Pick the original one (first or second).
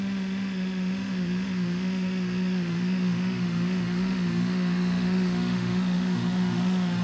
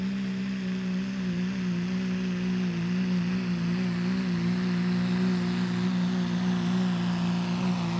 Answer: second